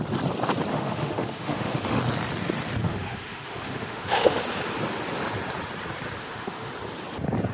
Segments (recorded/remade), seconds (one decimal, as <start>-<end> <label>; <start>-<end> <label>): 0.0-0.7 recorded; 0.7-2.0 remade; 2.0-2.8 recorded; 2.8-4.4 remade; 4.4-6.2 recorded; 6.2-6.7 remade; 6.7-7.5 recorded